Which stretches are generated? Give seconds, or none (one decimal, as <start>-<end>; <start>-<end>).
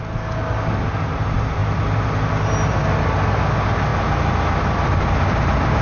none